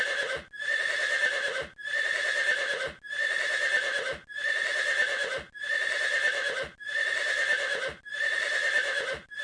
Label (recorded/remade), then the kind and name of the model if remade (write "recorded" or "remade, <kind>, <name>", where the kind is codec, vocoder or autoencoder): recorded